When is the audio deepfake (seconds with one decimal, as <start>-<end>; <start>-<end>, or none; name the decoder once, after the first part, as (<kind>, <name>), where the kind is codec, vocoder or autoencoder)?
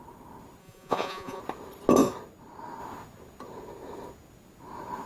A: 0.6-1.4 (vocoder, Vocos)